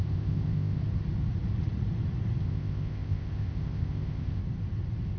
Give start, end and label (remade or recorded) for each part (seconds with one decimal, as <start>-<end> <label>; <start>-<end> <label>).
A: 0.0-0.8 remade; 0.8-2.4 recorded; 2.4-4.4 remade; 4.4-5.2 recorded